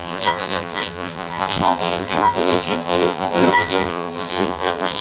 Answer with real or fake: fake